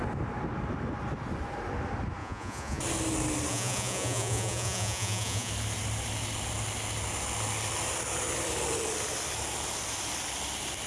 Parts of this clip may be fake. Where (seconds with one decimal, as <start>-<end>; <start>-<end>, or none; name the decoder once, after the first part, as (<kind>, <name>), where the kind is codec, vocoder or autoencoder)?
2.2-2.8 (vocoder, Vocos); 3.5-5.5